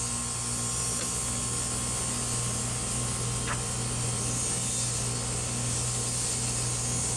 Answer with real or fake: real